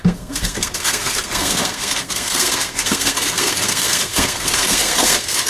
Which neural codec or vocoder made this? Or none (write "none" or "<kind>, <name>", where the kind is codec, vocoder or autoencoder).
codec, SNAC